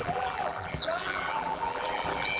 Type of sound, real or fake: fake